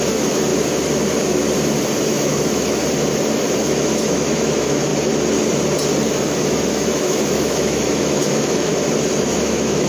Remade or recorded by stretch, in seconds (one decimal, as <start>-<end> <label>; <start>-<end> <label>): 0.0-0.5 remade; 0.5-2.0 recorded; 2.0-2.8 remade; 2.8-3.6 recorded; 3.6-4.9 remade; 4.9-6.1 recorded; 6.1-8.7 remade; 8.7-9.2 recorded; 9.2-9.9 remade